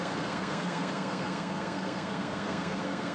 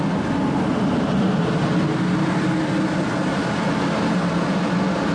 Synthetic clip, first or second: first